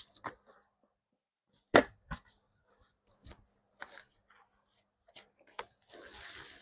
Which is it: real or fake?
real